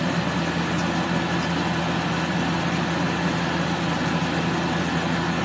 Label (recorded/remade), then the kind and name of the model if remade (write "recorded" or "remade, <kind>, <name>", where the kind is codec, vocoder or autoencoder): recorded